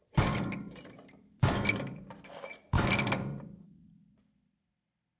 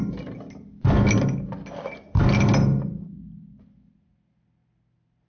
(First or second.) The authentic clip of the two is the second